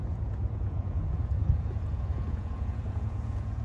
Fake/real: fake